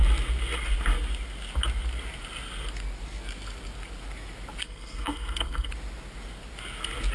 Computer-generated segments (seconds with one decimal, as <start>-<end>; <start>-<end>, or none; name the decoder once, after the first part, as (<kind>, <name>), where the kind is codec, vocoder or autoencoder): 4.6-5.7 (codec, SNAC)